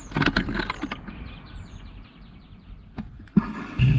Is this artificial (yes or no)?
no